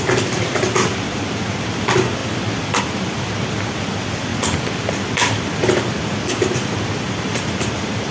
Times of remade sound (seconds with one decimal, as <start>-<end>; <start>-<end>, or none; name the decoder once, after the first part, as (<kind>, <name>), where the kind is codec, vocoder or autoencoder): 0.0-2.2 (vocoder, BigVGAN v2); 2.8-4.3; 6.0-8.1

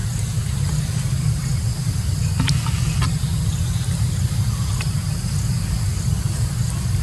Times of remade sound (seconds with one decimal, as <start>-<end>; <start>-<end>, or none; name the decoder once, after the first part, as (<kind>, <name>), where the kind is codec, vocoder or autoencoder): none